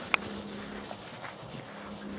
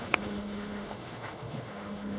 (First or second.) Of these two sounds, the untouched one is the first